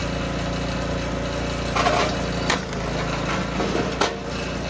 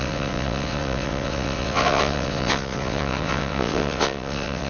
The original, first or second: first